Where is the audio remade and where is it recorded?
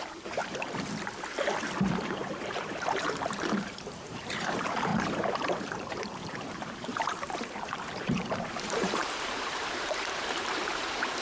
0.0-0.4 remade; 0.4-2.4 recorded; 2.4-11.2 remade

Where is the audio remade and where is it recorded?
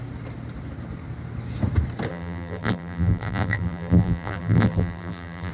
0.0-2.1 recorded; 2.1-5.5 remade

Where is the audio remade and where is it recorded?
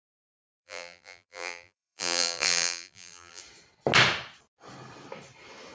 0.0-3.4 remade; 3.4-5.7 recorded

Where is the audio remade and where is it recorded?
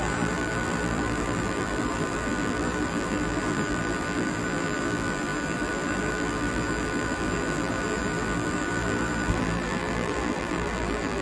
0.0-11.2 remade